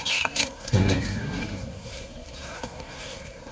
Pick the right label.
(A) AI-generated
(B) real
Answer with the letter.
A